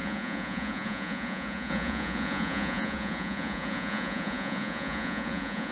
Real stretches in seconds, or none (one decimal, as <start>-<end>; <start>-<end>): none